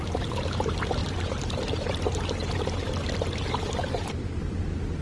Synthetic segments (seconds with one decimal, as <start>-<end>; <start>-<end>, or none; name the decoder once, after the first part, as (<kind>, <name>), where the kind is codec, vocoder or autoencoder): 1.0-1.9 (vocoder, BigVGAN v2); 2.4-4.6